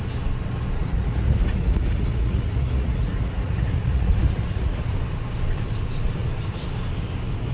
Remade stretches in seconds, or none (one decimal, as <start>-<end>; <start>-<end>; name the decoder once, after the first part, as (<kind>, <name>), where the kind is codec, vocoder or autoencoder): 0.8-4.9 (vocoder, Vocos)